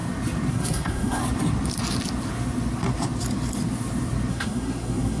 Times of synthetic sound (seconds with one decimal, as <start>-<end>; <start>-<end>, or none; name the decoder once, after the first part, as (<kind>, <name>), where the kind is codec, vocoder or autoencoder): 0.5-1.2 (codec, SNAC); 4.3-5.2